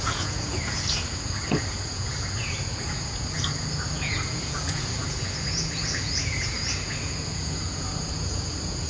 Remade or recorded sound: remade